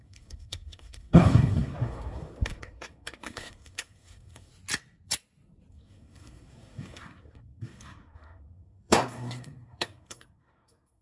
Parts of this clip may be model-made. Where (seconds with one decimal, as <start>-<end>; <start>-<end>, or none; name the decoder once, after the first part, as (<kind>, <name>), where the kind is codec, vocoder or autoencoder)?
0.0-4.5 (codec, SNAC); 5.7-11.0